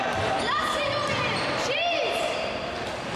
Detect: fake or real fake